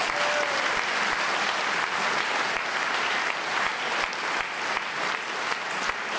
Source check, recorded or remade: recorded